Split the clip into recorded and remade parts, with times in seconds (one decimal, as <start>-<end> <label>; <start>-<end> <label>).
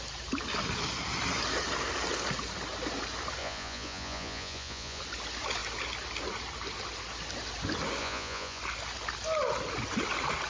0.0-3.4 recorded; 3.4-5.0 remade; 5.0-8.0 recorded; 8.0-8.6 remade; 8.6-10.5 recorded